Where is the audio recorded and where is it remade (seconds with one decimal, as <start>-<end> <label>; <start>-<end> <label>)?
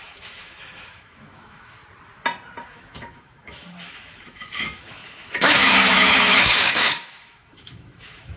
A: 0.0-1.8 remade; 1.8-2.7 recorded; 2.7-8.4 remade